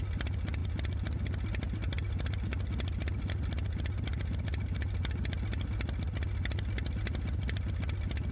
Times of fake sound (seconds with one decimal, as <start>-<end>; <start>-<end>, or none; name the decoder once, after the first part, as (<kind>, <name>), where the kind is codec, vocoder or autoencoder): none

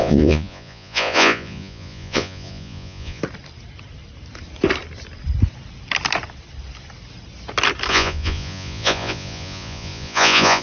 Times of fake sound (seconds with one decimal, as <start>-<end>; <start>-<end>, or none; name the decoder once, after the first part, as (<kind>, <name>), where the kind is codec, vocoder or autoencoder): 0.0-3.2 (vocoder, Vocos); 7.9-10.6

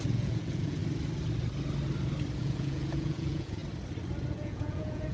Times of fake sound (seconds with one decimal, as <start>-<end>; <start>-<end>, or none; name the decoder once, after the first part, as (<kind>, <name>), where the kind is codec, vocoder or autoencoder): 0.0-0.8 (vocoder, Vocos); 2.4-3.6; 4.3-5.1

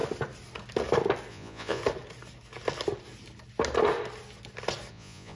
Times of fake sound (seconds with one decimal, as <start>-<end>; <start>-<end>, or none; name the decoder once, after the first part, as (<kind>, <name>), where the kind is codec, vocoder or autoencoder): 1.3-1.8 (vocoder, Vocos); 4.9-5.4

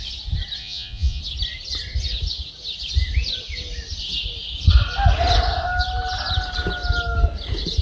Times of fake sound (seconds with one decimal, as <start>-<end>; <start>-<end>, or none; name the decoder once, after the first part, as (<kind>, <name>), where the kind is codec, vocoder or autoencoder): 0.6-1.2 (vocoder, Vocos)

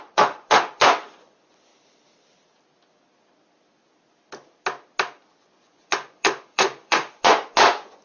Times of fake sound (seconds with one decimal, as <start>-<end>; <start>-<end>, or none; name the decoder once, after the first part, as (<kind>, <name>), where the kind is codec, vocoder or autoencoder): 0.0-1.7 (vocoder, Vocos); 5.3-8.0